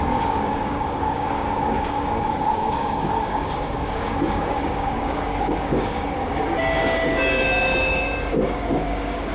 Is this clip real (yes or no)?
no